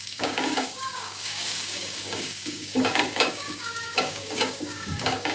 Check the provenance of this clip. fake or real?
fake